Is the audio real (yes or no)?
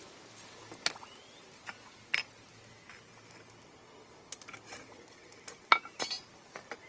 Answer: yes